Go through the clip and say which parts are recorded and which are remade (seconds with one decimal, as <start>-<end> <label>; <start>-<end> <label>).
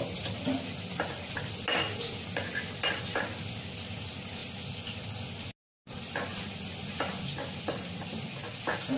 0.0-9.0 recorded